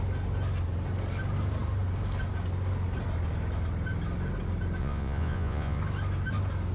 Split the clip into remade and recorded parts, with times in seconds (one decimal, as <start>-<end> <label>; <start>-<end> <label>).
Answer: 0.0-4.8 recorded; 4.8-5.8 remade; 5.8-6.7 recorded